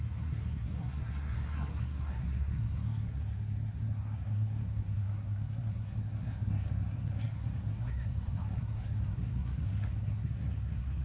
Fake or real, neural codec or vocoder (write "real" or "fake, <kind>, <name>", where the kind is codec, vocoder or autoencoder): fake, codec, SNAC